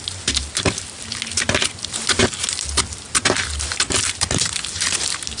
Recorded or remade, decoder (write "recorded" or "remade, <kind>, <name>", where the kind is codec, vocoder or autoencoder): recorded